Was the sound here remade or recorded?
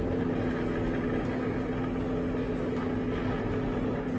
recorded